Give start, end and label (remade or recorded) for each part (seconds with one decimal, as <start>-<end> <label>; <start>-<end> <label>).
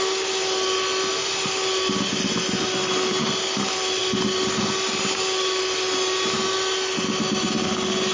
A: 0.0-8.1 recorded